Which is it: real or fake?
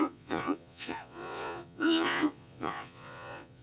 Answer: fake